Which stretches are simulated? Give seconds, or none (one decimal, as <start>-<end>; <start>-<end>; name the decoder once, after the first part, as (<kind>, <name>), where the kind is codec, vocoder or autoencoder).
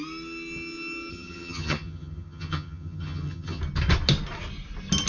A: 1.1-3.6 (vocoder, HiFi-GAN)